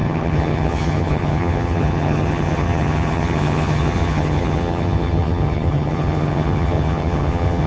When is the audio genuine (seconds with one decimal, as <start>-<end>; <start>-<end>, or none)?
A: none